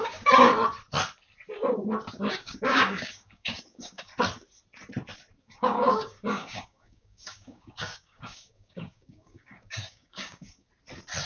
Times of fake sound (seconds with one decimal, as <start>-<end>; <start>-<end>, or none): 0.0-0.5; 2.1-4.1; 5.4-10.7

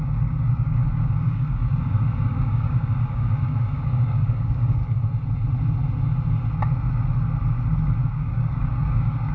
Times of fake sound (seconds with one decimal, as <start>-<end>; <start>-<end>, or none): 0.0-4.8; 8.1-9.3

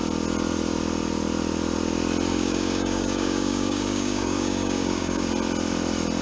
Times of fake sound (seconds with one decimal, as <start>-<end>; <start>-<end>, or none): 2.3-5.3

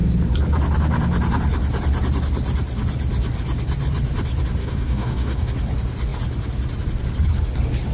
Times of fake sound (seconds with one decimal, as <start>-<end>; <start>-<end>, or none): 4.6-5.5

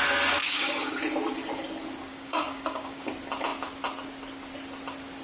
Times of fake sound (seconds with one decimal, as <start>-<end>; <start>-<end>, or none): 0.4-0.9; 2.1-3.1

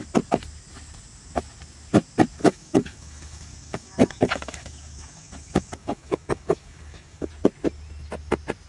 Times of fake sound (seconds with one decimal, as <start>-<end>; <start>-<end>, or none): 2.4-7.3